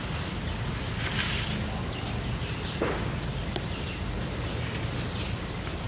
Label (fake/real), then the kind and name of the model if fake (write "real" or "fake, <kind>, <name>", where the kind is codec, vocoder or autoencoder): real